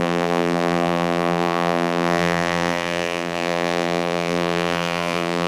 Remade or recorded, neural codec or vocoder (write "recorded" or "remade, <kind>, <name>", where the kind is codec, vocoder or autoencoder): remade, vocoder, BigVGAN v2